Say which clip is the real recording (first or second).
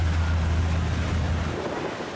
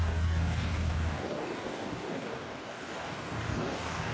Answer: first